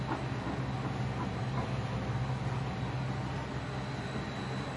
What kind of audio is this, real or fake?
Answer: real